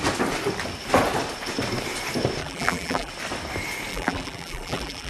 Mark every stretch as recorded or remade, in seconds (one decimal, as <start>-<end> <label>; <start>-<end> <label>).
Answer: 0.0-2.4 recorded; 2.4-3.1 remade; 3.1-3.9 recorded; 3.9-5.1 remade